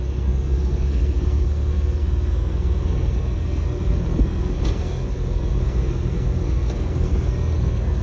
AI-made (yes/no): yes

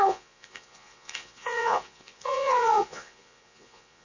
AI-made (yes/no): yes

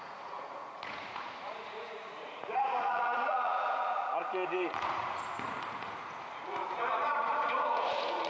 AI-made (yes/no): yes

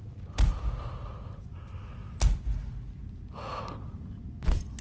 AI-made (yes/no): no